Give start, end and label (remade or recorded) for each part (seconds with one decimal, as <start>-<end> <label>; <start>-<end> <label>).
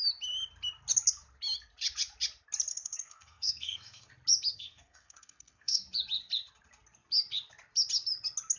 0.0-2.7 recorded; 2.7-4.1 remade; 4.1-4.5 recorded; 4.5-5.8 remade; 5.8-8.6 recorded